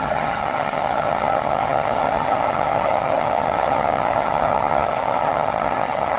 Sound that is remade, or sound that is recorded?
remade